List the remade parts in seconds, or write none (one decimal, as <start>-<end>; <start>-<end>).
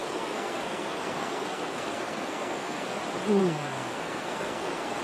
0.0-3.0; 3.4-5.0